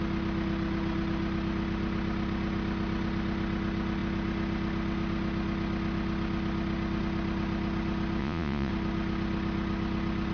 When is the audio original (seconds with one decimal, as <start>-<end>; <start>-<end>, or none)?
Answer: 0.0-8.2; 8.7-10.3